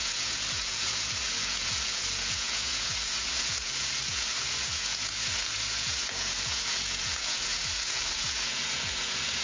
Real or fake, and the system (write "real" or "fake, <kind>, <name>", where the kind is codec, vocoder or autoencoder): fake, vocoder, Vocos